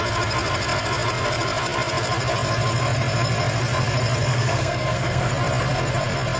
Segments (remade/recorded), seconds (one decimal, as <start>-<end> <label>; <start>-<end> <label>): 0.0-4.3 recorded; 4.3-5.3 remade; 5.3-6.4 recorded